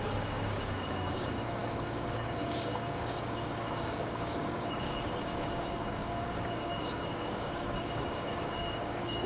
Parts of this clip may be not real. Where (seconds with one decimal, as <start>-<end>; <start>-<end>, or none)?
0.0-9.3